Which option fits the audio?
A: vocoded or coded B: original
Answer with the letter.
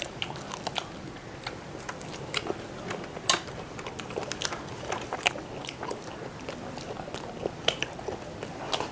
B